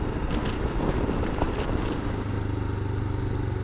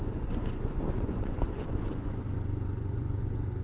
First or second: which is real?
first